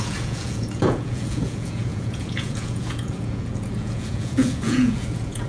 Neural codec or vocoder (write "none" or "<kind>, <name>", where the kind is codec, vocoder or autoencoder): vocoder, Vocos